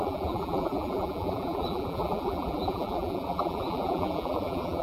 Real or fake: fake